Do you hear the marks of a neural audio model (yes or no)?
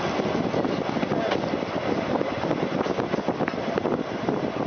no